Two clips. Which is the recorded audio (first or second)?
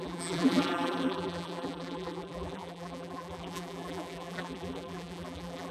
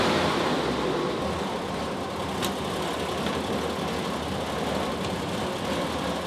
second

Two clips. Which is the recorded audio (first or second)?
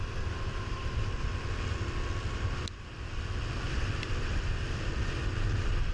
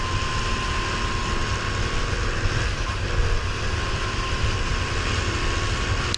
second